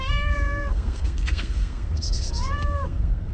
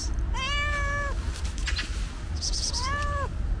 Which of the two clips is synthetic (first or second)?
first